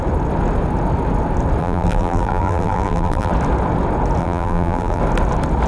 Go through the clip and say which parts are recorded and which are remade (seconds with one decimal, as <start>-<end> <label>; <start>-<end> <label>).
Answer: 0.0-1.6 recorded; 1.6-3.3 remade; 3.3-4.2 recorded; 4.2-5.0 remade; 5.0-5.7 recorded